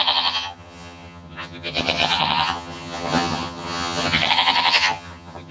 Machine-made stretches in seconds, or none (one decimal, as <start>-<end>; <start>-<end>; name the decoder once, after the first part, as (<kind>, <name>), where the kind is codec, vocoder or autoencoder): 0.0-5.5 (vocoder, HiFi-GAN)